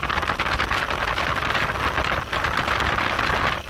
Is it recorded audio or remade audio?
recorded